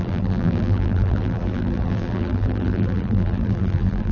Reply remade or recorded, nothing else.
remade